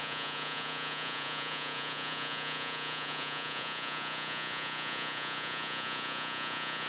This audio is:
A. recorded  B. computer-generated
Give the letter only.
B